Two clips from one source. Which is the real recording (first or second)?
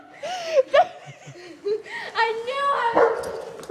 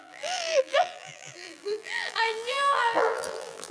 first